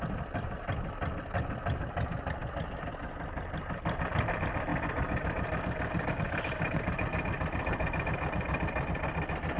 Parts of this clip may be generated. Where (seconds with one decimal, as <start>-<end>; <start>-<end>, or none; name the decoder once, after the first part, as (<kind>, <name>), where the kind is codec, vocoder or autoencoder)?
none